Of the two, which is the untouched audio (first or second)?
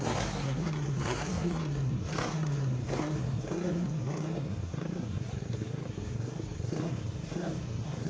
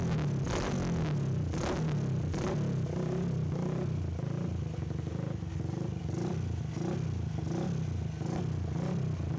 second